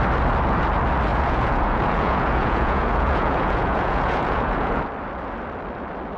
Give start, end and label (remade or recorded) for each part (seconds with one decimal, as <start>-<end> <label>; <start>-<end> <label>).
0.0-1.1 recorded; 1.1-4.8 remade; 4.8-6.2 recorded